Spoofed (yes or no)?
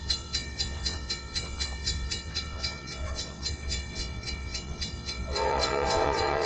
yes